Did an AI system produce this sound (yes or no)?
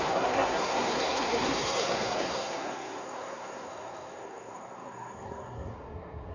yes